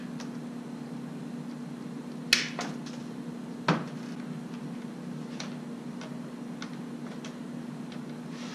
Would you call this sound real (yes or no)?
yes